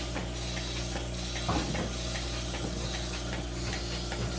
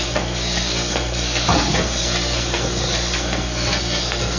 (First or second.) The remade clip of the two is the second